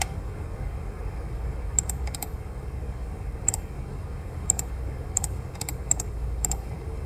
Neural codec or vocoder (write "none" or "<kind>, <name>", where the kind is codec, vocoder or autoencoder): codec, DAC